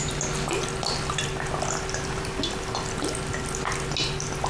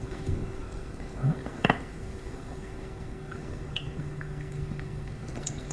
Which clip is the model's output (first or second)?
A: second